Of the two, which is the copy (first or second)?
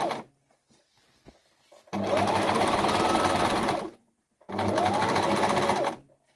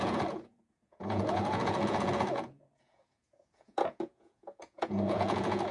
second